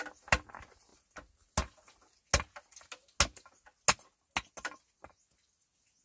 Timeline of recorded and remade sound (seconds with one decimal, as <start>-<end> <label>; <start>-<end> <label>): 0.0-6.0 recorded